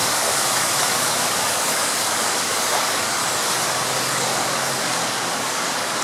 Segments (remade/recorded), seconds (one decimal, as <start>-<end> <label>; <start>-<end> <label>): 0.0-3.2 remade; 3.2-4.0 recorded; 4.0-6.0 remade